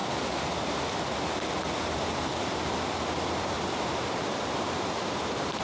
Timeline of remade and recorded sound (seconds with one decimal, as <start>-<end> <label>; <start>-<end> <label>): 0.0-3.4 recorded; 3.4-5.6 remade